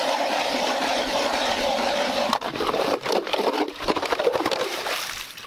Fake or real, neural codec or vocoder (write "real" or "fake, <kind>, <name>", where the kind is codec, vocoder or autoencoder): fake, vocoder, BigVGAN v2